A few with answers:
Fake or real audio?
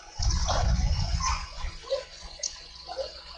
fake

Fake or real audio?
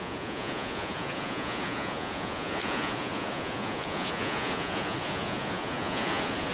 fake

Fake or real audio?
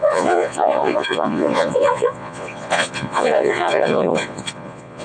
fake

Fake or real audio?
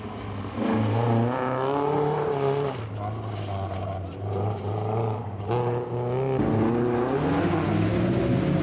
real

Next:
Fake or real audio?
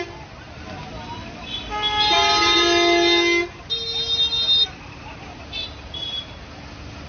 real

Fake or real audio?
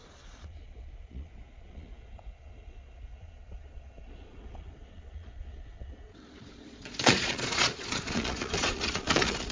fake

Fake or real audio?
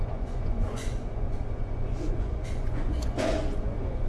fake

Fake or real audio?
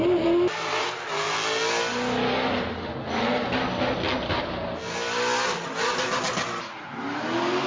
real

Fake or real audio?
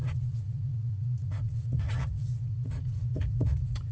fake